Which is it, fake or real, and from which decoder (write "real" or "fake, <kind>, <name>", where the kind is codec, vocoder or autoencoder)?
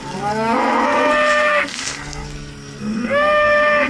fake, codec, SNAC